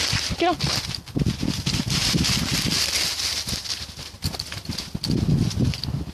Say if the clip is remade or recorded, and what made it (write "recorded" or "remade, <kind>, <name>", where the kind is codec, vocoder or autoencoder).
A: recorded